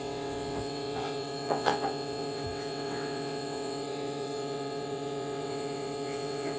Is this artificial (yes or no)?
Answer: yes